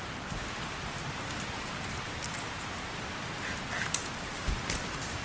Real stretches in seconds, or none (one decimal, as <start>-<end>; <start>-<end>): 0.0-5.2

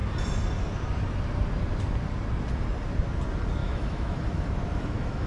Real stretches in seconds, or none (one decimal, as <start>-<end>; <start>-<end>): 0.0-3.6